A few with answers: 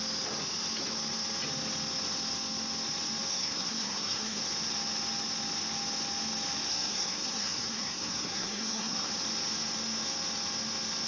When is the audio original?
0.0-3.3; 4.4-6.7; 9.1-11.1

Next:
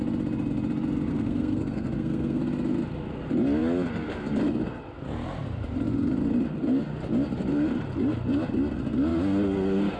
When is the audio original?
0.0-1.1; 2.4-10.0

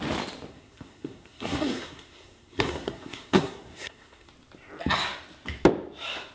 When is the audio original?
0.0-0.5; 4.3-6.3

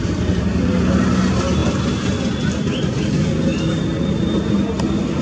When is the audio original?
0.0-5.2